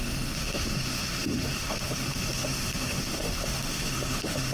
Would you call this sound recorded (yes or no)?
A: no